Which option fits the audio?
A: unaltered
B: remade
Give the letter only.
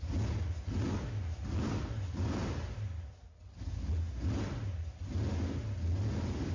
A